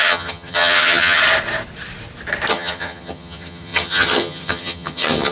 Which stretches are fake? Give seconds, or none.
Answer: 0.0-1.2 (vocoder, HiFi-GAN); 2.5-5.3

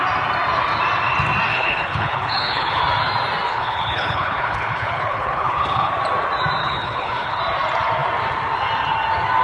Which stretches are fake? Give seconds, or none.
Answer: 1.5-2.8 (codec, HILCodec); 3.5-5.9; 6.6-7.4

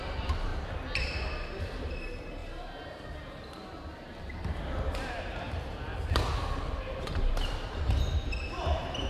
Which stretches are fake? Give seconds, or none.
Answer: 0.0-0.5 (vocoder, BigVGAN v2); 1.6-2.4; 4.9-5.9; 6.8-9.1